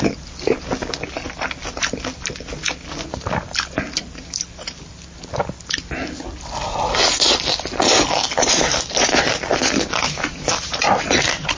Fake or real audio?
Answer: real